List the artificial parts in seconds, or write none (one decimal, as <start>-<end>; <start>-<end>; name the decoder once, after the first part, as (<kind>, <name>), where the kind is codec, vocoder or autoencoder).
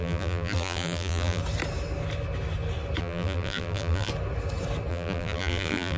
0.0-1.4 (vocoder, BigVGAN v2); 3.0-4.1; 4.9-6.0